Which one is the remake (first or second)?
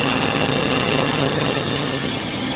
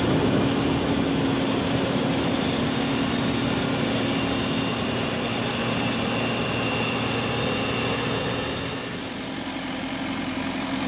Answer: first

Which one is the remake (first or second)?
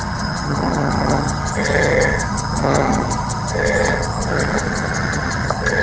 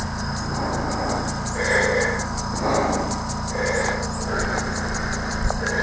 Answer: first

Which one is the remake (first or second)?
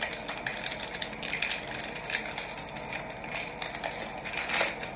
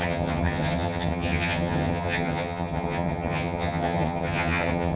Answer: second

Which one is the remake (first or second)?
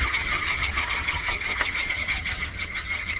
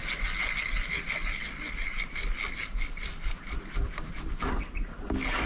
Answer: first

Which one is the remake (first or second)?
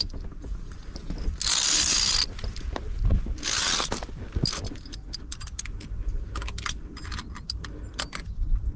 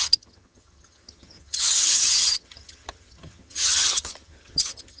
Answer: second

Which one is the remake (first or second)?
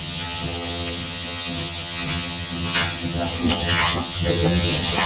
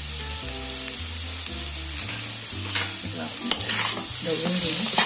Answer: first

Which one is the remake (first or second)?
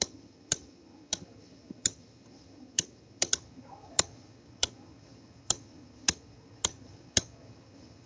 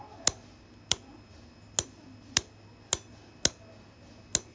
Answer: first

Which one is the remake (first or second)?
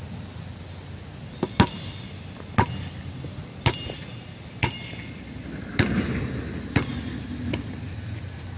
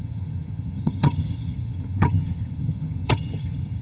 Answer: second